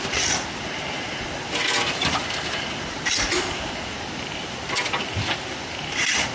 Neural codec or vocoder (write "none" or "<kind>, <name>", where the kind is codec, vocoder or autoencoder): none